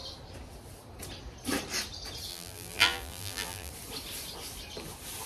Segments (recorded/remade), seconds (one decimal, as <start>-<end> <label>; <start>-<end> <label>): 0.0-2.3 recorded; 2.3-3.7 remade; 3.7-5.3 recorded